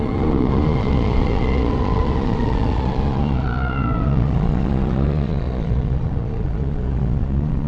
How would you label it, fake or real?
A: fake